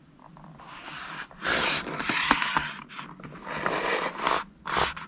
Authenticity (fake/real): real